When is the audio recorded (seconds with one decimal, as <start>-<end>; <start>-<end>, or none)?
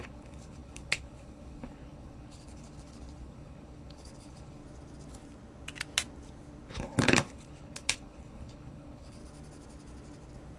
4.6-6.7; 9.2-10.6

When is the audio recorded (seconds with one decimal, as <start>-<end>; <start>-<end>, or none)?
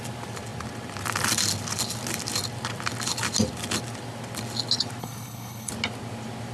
0.0-5.0; 5.7-6.5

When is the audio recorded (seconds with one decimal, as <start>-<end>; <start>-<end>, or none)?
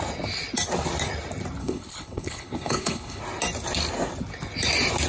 0.0-1.6; 3.2-5.1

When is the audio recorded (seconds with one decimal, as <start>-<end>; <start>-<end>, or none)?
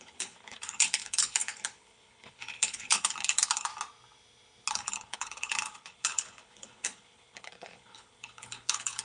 3.7-4.7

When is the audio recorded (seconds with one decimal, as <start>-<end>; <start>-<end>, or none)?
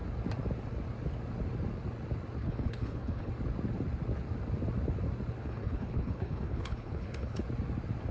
0.0-2.4; 3.3-5.4; 7.4-8.1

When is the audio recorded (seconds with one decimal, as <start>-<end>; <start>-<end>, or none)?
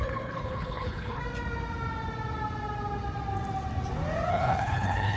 1.2-4.3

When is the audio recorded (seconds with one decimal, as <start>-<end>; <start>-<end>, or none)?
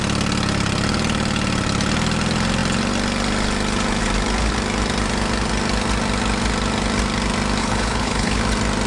0.0-7.6; 8.4-8.9